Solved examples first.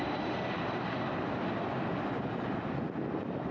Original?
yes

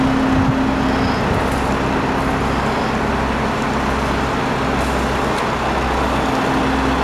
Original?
yes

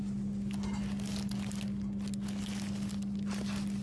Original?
yes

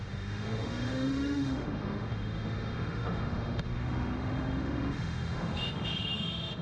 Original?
no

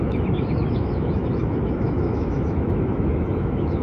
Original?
no